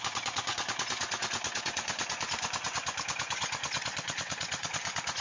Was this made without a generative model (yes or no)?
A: no